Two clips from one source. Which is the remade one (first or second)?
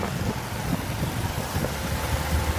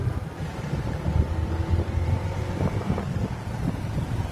second